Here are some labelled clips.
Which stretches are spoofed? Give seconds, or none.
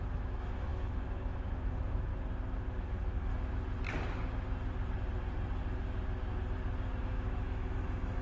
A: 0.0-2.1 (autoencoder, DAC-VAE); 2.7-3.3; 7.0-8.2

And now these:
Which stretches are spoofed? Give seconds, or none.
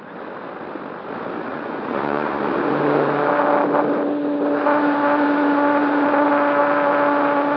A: 1.5-2.4 (vocoder, Vocos)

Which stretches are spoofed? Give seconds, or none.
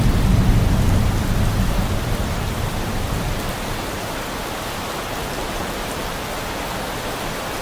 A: 5.2-6.3 (vocoder, BigVGAN v2)